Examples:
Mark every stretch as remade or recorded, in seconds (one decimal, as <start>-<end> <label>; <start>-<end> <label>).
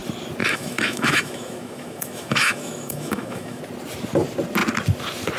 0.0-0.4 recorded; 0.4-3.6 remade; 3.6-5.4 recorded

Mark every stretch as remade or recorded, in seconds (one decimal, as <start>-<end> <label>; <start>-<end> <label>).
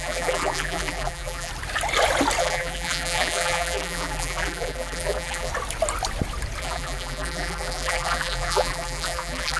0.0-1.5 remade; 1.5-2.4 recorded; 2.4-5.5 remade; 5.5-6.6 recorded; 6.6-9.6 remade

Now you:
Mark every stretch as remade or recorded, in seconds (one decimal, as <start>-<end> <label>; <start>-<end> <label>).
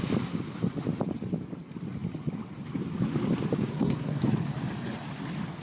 0.0-3.7 recorded; 3.7-4.2 remade; 4.2-5.6 recorded